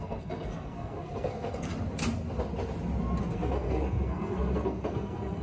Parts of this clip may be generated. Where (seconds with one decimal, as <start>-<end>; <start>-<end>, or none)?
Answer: 0.0-1.7; 3.2-5.4